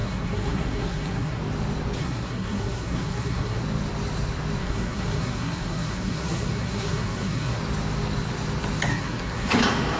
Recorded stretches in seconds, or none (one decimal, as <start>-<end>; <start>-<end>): 1.4-2.0; 3.6-4.6; 7.6-8.9; 9.6-10.0